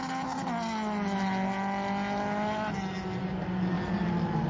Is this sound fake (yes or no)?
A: no